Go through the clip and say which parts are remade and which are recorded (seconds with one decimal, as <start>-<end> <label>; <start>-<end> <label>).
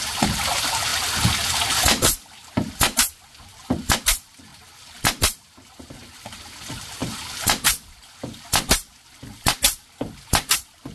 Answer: 0.0-10.9 recorded